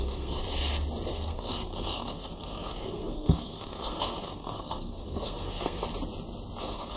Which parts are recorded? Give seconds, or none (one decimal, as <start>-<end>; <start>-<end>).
0.4-1.1; 5.8-6.6